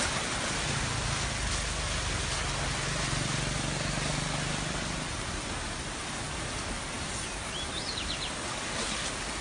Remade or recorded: recorded